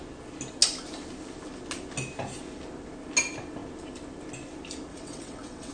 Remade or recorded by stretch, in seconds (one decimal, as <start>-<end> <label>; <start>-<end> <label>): 0.0-4.9 recorded; 4.9-5.7 remade